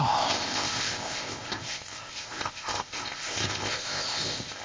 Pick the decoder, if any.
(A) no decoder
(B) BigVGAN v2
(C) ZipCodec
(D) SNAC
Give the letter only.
C